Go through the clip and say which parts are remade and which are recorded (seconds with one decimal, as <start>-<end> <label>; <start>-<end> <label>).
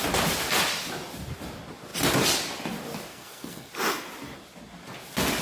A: 0.0-3.1 recorded; 3.1-3.7 remade; 3.7-5.4 recorded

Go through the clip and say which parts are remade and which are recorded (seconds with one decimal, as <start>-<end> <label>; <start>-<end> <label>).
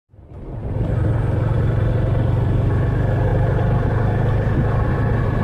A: 0.0-3.3 recorded; 3.3-4.0 remade; 4.0-5.4 recorded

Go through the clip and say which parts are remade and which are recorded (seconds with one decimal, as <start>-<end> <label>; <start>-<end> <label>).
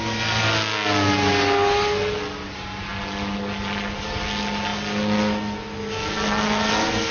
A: 0.0-7.1 recorded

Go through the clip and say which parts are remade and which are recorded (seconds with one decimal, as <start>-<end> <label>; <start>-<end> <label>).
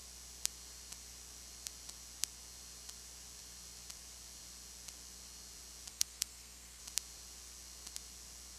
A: 0.0-5.9 recorded; 5.9-6.8 remade; 6.8-8.6 recorded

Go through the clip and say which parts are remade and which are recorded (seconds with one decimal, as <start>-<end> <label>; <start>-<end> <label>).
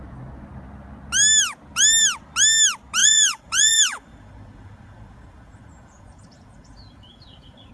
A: 0.0-3.0 recorded; 3.0-7.7 remade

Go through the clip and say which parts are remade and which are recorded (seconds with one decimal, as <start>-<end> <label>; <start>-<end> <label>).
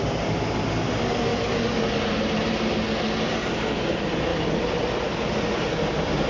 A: 0.0-6.3 recorded